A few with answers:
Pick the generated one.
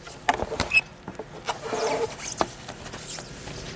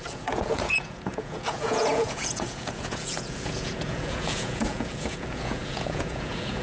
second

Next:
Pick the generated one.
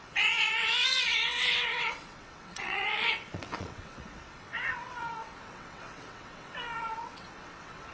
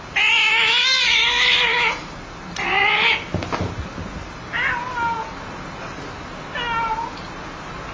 first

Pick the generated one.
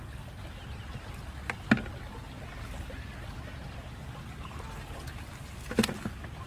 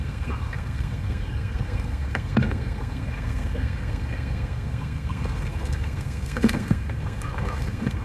second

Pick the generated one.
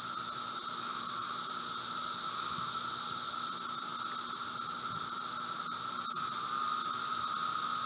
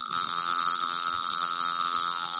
second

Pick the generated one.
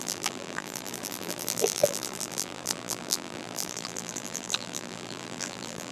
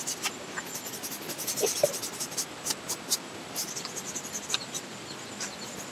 first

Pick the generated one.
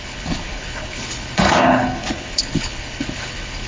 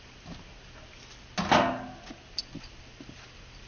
first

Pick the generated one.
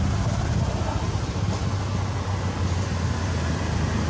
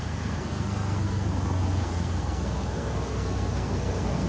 second